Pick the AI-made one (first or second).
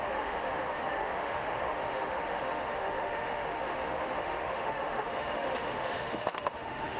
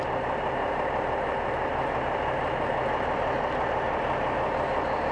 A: first